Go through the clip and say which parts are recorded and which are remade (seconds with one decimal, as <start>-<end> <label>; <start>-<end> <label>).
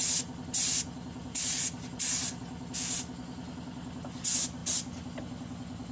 0.0-5.9 recorded